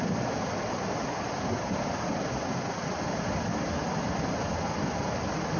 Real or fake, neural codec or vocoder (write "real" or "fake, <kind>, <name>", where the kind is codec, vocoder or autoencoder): real